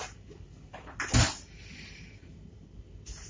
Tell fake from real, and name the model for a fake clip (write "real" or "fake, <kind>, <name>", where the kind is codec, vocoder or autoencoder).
real